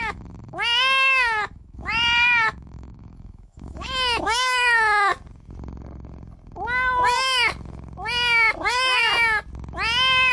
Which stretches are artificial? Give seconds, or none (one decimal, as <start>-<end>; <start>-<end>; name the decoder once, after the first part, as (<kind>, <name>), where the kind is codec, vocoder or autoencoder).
0.0-5.1 (autoencoder, DAC-VAE)